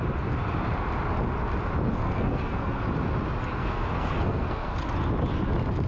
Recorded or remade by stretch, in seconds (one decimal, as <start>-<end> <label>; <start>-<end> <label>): 0.0-1.9 recorded; 1.9-2.8 remade; 2.8-3.6 recorded; 3.6-4.8 remade; 4.8-5.9 recorded